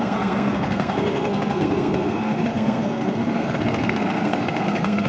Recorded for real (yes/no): no